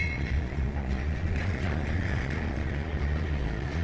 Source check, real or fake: fake